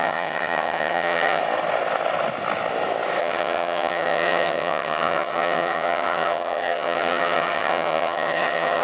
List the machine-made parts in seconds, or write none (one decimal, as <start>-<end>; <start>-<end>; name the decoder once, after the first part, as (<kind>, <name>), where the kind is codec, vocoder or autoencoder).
0.0-1.4 (vocoder, HiFi-GAN); 3.2-8.8